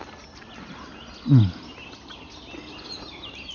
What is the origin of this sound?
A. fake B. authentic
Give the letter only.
B